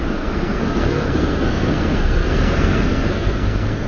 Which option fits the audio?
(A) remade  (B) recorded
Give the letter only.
A